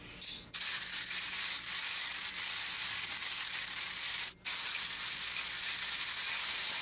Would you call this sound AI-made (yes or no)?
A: no